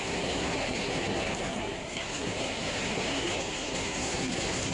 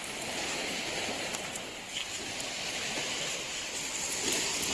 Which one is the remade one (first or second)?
first